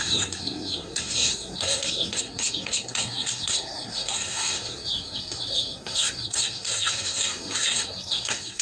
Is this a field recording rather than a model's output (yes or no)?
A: no